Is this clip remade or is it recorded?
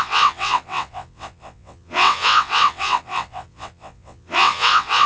remade